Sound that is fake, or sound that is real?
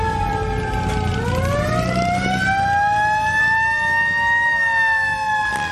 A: real